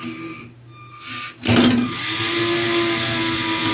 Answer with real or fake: real